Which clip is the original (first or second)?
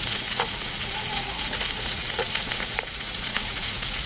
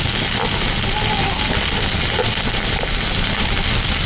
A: second